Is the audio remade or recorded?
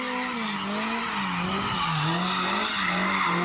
recorded